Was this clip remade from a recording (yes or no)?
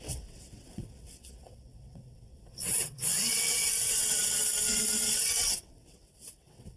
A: yes